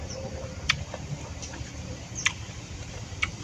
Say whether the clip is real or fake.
fake